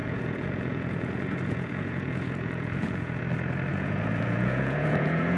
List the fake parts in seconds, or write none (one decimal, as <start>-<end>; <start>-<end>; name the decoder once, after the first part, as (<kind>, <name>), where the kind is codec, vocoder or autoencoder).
0.0-3.2 (vocoder, Vocos); 3.7-5.4